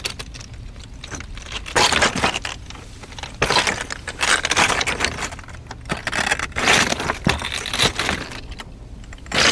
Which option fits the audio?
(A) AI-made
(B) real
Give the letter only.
B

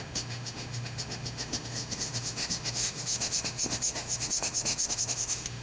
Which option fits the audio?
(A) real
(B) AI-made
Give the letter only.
B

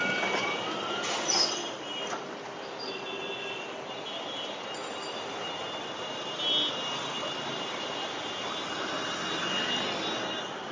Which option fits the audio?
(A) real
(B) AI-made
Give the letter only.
A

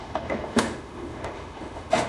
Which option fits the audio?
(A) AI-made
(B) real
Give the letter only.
A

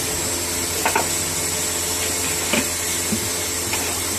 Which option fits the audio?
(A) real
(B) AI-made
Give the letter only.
A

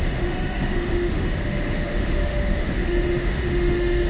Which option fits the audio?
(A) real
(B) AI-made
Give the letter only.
B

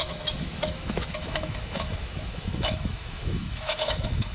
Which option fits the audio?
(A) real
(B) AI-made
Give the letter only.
B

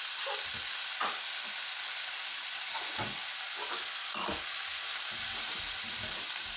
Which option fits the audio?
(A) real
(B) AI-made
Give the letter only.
A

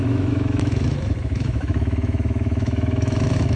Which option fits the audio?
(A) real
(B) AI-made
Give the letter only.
B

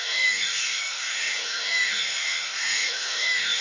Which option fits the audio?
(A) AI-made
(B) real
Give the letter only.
A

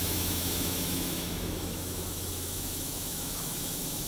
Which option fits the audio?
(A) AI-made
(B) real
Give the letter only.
A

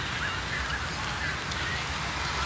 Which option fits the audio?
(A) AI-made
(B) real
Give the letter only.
B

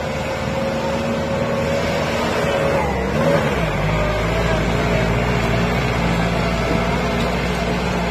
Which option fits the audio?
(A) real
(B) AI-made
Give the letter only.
A